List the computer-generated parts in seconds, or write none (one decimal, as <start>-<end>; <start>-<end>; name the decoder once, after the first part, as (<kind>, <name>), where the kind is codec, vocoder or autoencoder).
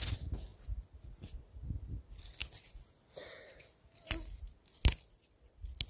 none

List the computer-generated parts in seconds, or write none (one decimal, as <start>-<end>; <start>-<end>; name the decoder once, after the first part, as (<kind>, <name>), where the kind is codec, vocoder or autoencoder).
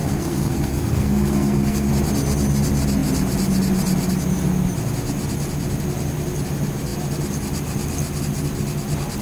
0.0-1.9 (codec, SNAC)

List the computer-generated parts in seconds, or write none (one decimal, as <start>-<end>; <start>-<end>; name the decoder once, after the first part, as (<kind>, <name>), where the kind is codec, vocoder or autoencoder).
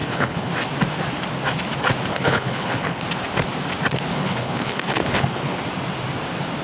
0.0-0.5 (codec, HILCodec); 2.1-3.0; 4.1-5.6